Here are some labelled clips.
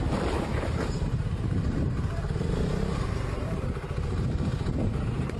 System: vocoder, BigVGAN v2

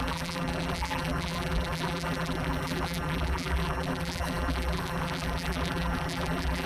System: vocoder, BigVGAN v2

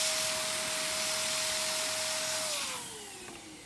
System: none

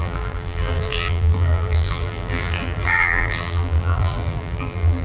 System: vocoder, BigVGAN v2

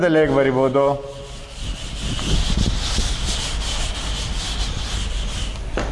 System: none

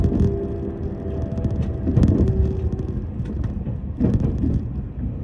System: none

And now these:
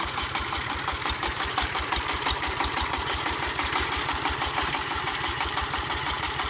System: vocoder, BigVGAN v2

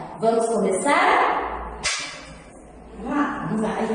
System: none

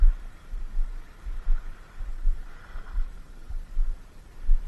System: vocoder, BigVGAN v2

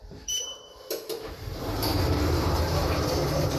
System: vocoder, BigVGAN v2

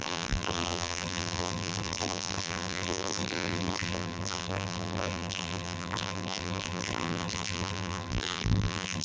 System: vocoder, BigVGAN v2